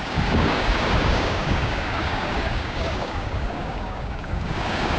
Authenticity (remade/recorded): remade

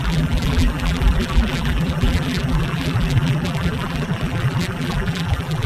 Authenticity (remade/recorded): remade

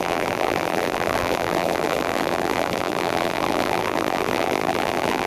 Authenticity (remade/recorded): remade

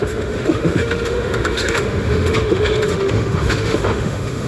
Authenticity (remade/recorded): remade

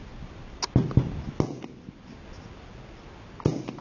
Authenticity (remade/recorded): recorded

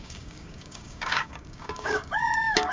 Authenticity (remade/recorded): remade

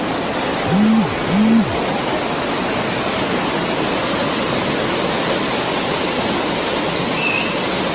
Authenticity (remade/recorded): recorded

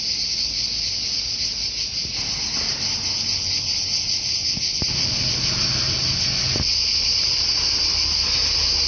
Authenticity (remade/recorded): recorded